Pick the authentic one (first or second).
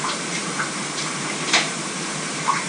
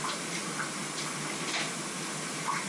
second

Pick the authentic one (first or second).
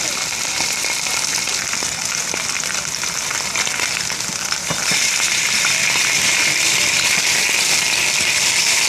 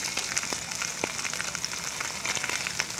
second